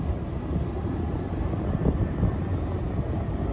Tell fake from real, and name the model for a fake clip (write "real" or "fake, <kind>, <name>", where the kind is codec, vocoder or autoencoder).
real